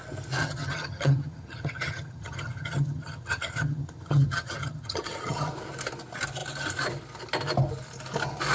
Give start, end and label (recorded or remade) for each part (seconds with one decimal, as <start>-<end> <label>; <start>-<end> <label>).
0.0-0.4 recorded; 0.4-5.5 remade; 5.5-8.5 recorded